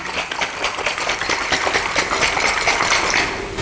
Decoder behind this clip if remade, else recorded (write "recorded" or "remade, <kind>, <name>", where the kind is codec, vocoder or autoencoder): recorded